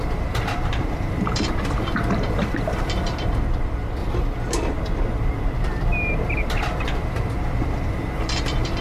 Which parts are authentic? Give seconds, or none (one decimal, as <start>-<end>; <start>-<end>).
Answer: 4.0-7.1